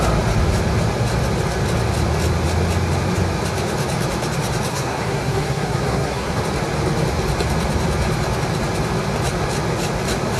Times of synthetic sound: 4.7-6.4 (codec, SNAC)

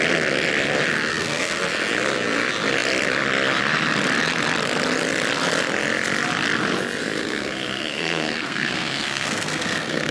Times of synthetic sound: 1.1-1.6 (codec, SNAC); 7.0-10.1

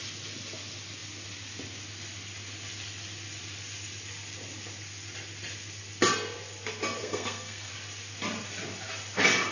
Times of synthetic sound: 7.0-7.7 (codec, SNAC)

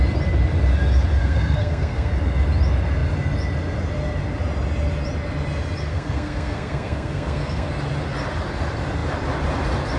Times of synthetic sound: 1.2-2.1 (codec, SNAC); 5.9-7.7

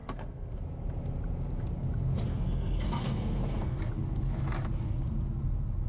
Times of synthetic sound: 0.0-0.6 (codec, SNAC); 2.3-3.8